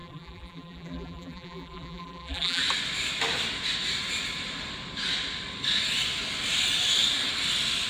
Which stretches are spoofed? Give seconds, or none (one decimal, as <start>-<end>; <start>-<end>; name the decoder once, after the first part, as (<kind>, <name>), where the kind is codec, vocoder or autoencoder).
0.0-2.6 (vocoder, BigVGAN v2)